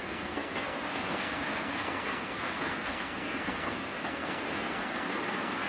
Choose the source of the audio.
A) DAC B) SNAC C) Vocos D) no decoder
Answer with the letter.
B